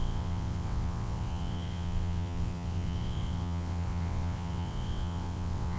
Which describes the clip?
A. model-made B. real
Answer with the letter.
A